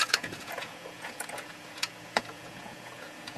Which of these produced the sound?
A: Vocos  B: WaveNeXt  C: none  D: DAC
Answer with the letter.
A